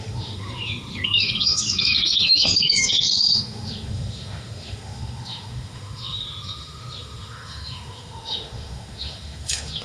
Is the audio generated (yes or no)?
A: yes